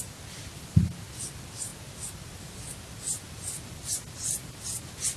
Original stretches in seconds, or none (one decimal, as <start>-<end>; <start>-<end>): 0.0-5.2